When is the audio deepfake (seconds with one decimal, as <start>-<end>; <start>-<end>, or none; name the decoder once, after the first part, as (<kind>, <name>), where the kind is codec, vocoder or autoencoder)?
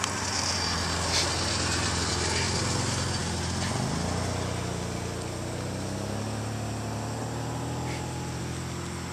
none